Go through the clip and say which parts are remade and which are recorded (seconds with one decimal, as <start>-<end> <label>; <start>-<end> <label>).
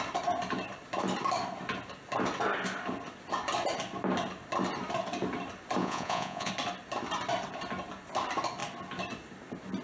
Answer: 0.0-5.8 recorded; 5.8-6.5 remade; 6.5-9.8 recorded